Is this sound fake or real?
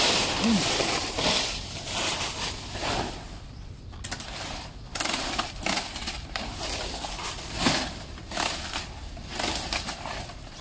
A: real